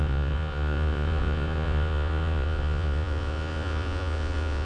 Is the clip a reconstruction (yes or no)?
yes